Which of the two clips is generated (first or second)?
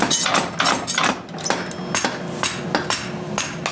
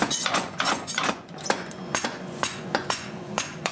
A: second